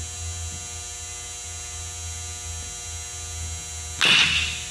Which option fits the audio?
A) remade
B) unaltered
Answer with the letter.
B